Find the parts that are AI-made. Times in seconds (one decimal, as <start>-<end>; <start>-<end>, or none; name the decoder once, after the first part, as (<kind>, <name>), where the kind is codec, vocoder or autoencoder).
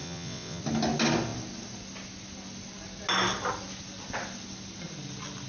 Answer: 0.0-0.6 (vocoder, WaveNeXt)